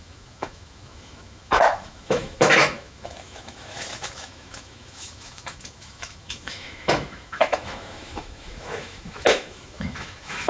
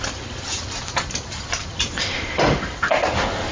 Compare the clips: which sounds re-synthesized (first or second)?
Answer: first